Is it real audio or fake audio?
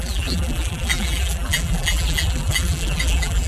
fake